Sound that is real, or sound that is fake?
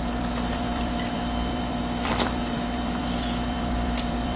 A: fake